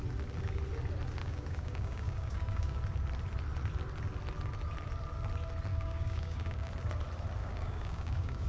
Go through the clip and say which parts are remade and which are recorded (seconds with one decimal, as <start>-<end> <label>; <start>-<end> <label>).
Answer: 0.0-1.2 recorded; 1.2-2.8 remade; 2.8-5.7 recorded; 5.7-6.7 remade; 6.7-7.4 recorded; 7.4-8.5 remade